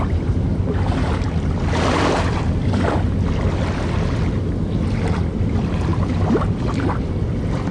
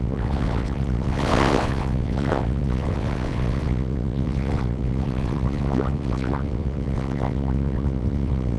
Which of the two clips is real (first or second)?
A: first